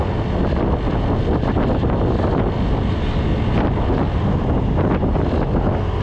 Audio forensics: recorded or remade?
recorded